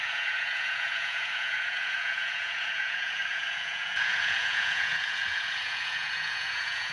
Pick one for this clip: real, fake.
fake